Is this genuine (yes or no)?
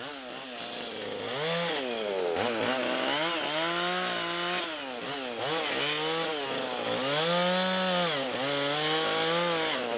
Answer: yes